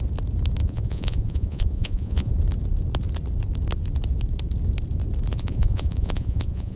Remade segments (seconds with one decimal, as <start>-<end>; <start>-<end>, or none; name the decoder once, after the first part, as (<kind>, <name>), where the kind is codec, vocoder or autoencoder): 0.6-2.3 (vocoder, Vocos); 5.3-6.8